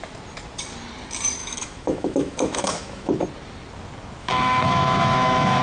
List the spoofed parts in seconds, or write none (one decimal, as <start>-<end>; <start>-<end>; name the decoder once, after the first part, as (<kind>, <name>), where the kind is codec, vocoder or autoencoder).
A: 1.4-3.2 (autoencoder, DAC-VAE); 4.2-5.6